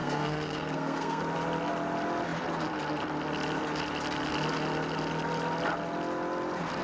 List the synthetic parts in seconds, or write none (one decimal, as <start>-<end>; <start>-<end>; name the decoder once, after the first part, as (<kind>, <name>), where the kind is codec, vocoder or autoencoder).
0.0-1.2 (codec, SNAC)